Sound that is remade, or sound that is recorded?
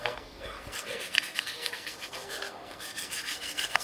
remade